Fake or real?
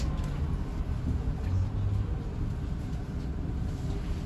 real